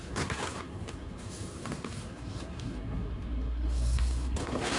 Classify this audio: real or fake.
fake